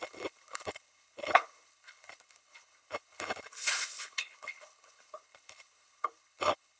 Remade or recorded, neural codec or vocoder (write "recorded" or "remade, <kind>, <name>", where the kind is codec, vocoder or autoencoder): remade, codec, HILCodec